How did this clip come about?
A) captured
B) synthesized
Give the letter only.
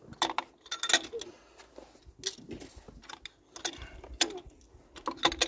A